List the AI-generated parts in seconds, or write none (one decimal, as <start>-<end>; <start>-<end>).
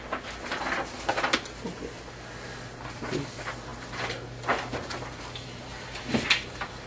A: none